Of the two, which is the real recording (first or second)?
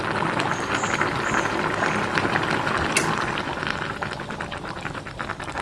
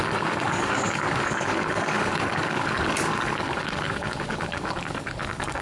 first